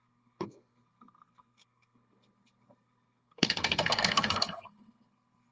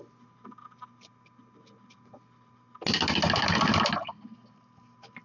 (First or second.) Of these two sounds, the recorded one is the second